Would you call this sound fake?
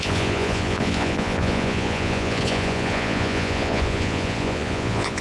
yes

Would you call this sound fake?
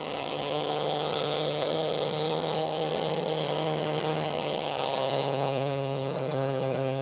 yes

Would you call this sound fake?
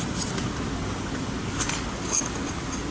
no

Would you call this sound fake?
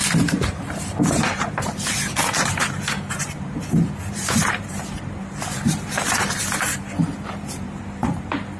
yes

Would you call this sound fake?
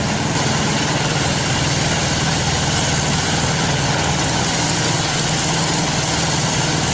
no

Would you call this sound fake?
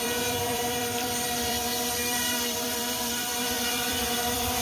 yes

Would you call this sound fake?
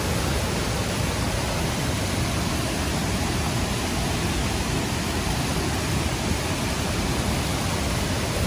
no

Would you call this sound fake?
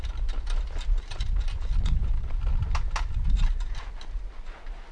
no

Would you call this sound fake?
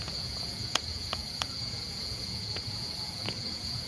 yes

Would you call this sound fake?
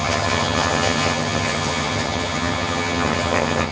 yes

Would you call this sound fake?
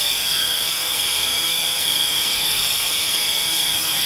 yes